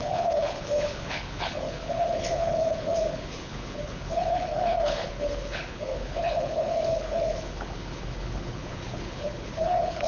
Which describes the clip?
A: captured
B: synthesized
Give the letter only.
B